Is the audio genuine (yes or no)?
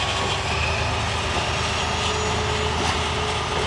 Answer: yes